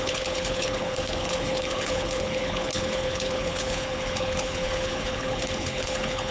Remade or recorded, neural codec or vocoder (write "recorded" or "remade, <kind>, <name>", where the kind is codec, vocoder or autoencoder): remade, codec, HILCodec